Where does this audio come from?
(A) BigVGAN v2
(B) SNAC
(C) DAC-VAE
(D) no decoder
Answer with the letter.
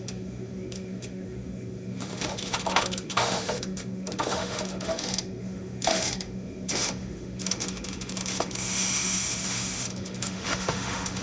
C